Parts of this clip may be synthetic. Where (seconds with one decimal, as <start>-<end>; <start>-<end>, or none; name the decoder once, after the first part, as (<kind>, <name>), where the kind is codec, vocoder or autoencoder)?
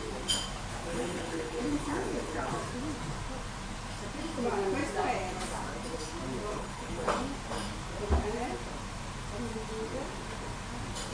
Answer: 0.9-2.5 (codec, HILCodec); 6.5-7.1